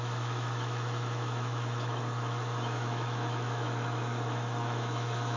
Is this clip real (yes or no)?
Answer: no